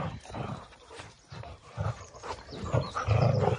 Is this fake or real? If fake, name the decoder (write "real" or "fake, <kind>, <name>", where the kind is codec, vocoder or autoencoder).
fake, vocoder, BigVGAN v2